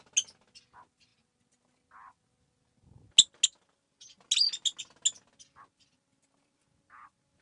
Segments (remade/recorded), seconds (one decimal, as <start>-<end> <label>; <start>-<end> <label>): 0.0-7.4 recorded